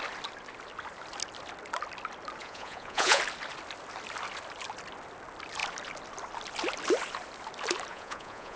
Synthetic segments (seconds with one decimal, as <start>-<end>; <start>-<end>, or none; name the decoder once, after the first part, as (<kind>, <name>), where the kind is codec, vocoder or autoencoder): 2.4-3.2 (vocoder, Vocos); 7.9-8.6